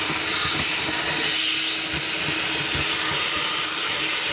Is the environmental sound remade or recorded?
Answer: recorded